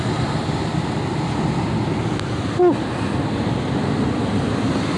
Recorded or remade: recorded